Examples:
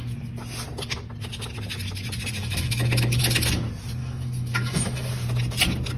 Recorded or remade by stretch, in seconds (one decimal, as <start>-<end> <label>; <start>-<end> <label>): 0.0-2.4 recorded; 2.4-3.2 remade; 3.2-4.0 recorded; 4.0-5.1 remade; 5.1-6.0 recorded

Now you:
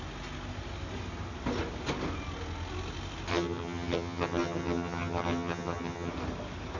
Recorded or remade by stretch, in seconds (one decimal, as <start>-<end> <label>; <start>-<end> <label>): 0.0-3.3 recorded; 3.3-6.1 remade; 6.1-6.8 recorded

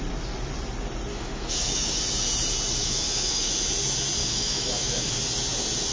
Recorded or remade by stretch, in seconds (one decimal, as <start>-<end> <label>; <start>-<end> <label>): 0.0-1.1 recorded; 1.1-2.0 remade; 2.0-2.8 recorded; 2.8-3.5 remade; 3.5-4.2 recorded; 4.2-5.1 remade; 5.1-5.9 recorded